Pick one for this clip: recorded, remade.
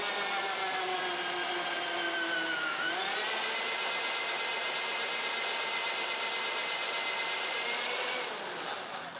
recorded